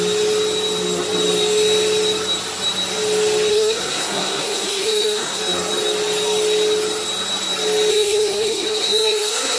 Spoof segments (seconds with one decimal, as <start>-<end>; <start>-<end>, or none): 3.5-5.4; 7.9-9.6

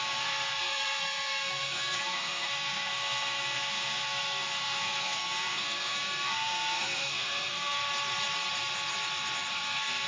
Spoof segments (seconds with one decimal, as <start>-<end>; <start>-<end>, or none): 0.0-7.8; 9.5-10.1

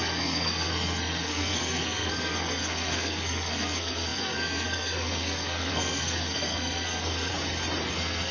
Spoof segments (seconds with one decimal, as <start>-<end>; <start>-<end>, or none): 0.0-7.3; 7.9-8.3

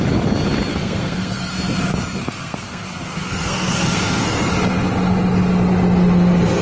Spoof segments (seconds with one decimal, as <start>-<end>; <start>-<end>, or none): 0.7-1.5; 2.2-4.5

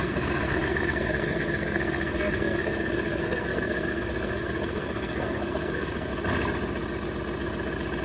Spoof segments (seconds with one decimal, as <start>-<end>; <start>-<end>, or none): 0.0-6.1